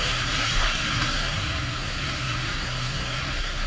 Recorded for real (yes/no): no